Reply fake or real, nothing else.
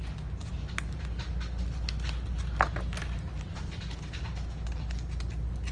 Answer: real